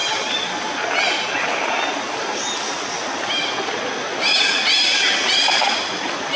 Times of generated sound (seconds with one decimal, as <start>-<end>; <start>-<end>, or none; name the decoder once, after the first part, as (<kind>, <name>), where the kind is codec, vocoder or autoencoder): none